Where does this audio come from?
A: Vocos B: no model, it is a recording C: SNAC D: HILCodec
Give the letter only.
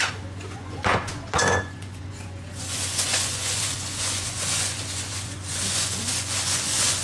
A